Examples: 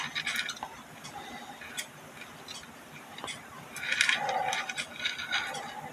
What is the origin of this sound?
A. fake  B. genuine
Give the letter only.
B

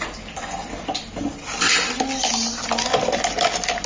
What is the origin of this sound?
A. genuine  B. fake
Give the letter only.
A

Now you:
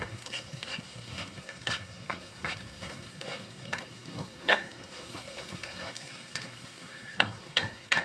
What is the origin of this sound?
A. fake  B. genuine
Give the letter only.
A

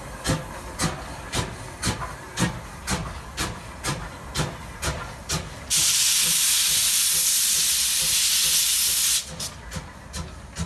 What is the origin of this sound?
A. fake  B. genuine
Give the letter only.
B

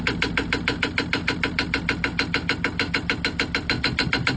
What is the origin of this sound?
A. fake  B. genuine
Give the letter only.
B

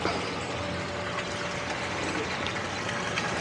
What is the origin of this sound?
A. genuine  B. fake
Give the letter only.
A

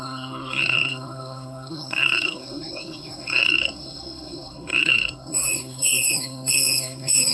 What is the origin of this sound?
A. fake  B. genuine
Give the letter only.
A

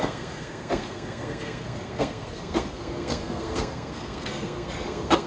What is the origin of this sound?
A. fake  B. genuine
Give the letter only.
A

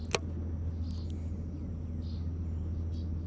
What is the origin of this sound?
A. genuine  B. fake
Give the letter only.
A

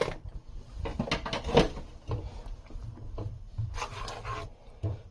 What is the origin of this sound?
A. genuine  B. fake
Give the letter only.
A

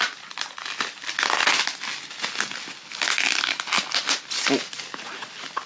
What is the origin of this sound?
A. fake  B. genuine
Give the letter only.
B